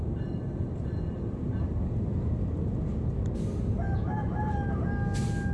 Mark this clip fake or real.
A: real